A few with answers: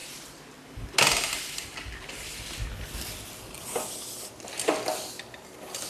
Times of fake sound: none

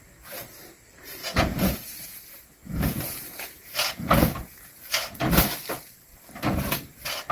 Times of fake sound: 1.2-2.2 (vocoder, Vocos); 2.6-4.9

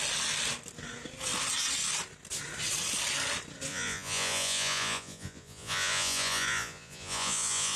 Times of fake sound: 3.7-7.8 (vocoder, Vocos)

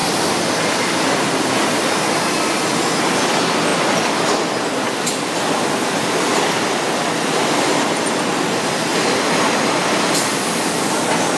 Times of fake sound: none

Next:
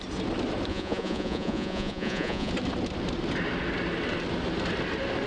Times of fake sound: 0.7-2.5 (vocoder, Vocos)